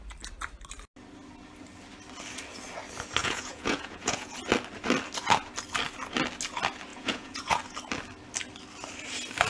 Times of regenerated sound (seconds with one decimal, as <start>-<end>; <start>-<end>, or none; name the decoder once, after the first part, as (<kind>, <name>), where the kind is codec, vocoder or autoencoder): 3.2-4.4 (vocoder, Vocos); 6.9-7.6